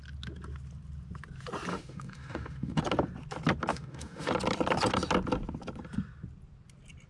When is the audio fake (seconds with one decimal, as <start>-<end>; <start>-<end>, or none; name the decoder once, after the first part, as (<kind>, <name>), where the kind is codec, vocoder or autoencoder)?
1.7-2.8 (autoencoder, DAC-VAE); 3.7-4.3